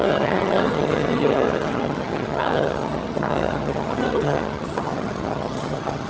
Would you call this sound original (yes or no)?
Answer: no